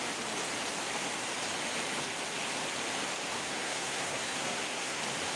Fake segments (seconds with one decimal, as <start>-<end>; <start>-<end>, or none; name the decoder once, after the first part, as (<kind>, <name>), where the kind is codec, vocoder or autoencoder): 3.3-5.0 (codec, SNAC)